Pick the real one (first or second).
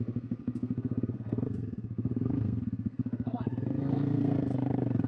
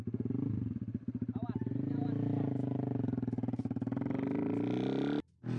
second